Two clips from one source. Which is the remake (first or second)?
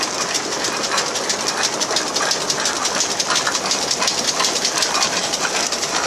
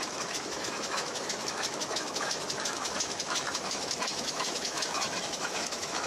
second